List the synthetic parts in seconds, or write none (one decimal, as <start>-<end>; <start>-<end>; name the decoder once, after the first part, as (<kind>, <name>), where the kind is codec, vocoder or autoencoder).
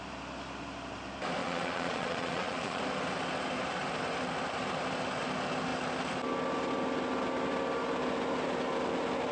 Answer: 1.4-2.8 (vocoder, Vocos)